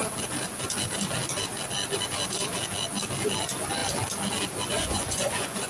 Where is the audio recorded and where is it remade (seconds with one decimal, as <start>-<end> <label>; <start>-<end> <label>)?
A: 0.0-4.7 recorded; 4.7-5.7 remade